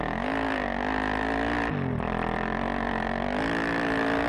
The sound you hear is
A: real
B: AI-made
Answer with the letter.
A